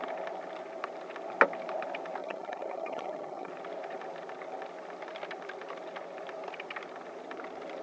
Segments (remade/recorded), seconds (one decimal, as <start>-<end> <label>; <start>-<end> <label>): 0.0-2.2 recorded; 2.2-3.5 remade; 3.5-7.8 recorded